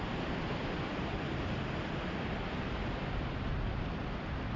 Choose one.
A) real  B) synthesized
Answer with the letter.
B